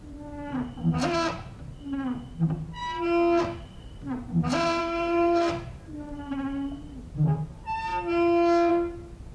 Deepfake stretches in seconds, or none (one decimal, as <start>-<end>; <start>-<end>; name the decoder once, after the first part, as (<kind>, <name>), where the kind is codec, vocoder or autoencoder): 4.8-5.5 (codec, SNAC)